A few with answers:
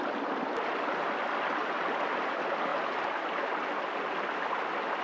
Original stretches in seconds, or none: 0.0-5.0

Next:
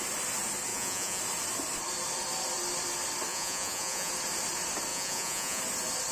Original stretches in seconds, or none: 0.0-0.7; 1.2-3.3; 4.1-4.9; 5.6-6.1

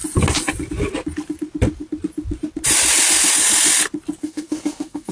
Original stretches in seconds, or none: 0.0-4.2

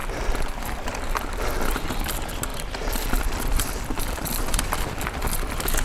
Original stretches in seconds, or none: 0.0-2.5; 4.7-5.8

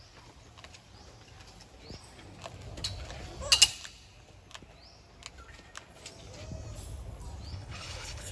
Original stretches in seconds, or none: 0.0-7.5

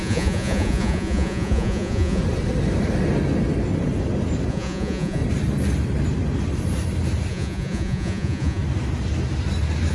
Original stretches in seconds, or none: 2.2-4.5; 5.2-7.3; 8.6-9.9